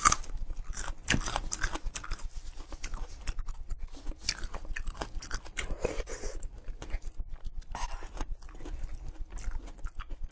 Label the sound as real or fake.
real